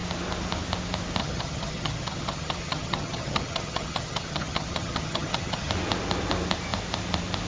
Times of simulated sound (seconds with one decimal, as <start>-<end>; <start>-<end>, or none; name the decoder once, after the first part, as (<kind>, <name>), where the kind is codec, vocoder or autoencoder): 1.2-5.7 (vocoder, HiFi-GAN)